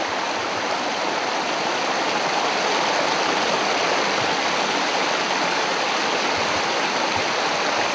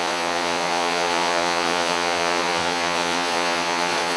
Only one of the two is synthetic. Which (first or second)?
second